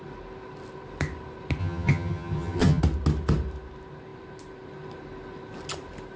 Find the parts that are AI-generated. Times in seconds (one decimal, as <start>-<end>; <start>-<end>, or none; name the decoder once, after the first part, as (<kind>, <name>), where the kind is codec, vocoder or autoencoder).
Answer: 1.6-2.8 (vocoder, HiFi-GAN)